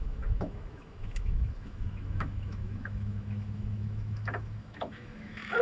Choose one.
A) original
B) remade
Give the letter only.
B